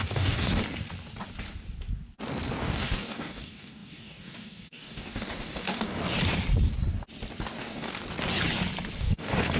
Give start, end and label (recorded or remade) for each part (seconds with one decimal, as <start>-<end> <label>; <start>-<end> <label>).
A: 0.0-0.6 remade; 0.6-2.6 recorded; 2.6-6.0 remade; 6.0-7.6 recorded; 7.6-8.0 remade; 8.0-9.0 recorded; 9.0-9.6 remade